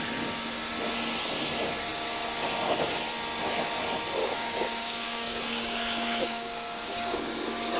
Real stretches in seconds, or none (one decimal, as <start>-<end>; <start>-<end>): 0.0-4.2; 7.2-7.8